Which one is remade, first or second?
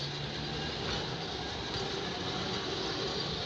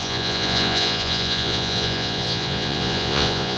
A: second